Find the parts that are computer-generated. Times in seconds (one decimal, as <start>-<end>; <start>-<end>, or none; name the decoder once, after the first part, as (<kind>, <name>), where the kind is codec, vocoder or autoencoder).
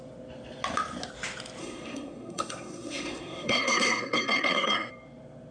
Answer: 1.6-4.9 (codec, SNAC)